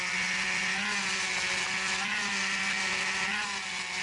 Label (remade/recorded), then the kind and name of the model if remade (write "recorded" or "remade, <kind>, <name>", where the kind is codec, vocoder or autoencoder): recorded